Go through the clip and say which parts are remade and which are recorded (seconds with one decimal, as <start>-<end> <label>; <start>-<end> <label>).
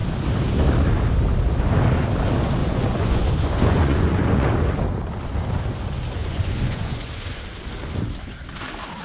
0.0-2.6 recorded; 2.6-4.5 remade; 4.5-6.2 recorded; 6.2-7.4 remade; 7.4-9.0 recorded